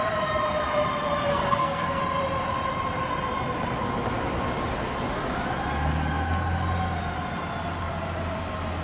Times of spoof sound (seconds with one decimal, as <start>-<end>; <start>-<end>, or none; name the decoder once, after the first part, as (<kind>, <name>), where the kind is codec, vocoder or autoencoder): 1.3-2.0 (codec, SNAC)